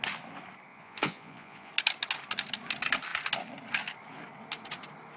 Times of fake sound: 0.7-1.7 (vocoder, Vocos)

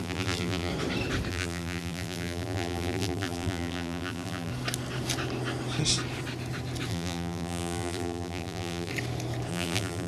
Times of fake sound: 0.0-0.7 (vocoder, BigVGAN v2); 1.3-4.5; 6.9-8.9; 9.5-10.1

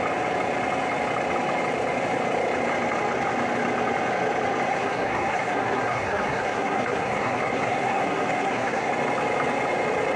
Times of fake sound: 4.7-8.9 (codec, SNAC)

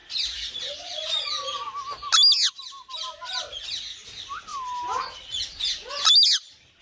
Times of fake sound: none

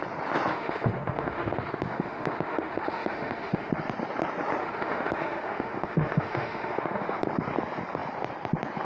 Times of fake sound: 0.5-3.7 (autoencoder, DAC-VAE); 4.6-7.2